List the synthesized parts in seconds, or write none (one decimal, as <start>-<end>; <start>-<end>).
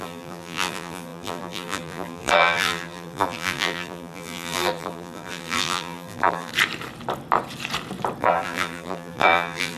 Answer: 0.0-6.5; 8.2-9.8